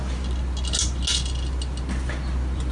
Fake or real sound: real